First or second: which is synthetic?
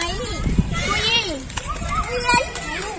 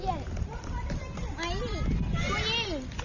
first